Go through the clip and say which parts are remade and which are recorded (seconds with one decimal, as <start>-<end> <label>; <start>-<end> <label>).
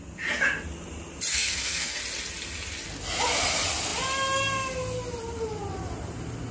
0.0-1.3 recorded; 1.3-2.0 remade; 2.0-6.5 recorded